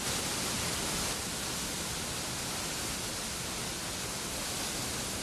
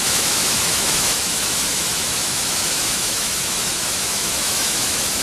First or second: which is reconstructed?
second